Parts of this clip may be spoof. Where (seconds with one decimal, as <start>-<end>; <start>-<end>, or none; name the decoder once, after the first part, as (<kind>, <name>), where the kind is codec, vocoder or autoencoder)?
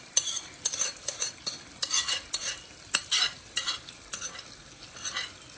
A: none